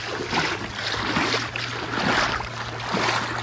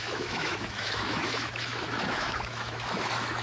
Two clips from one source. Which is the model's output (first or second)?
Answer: second